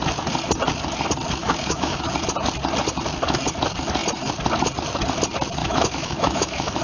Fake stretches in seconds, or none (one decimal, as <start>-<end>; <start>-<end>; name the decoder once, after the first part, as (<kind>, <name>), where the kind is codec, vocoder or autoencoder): 1.4-2.1 (autoencoder, DAC-VAE); 5.6-6.8